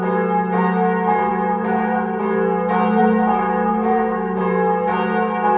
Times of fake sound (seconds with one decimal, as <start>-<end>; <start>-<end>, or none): 1.3-2.2; 3.0-4.4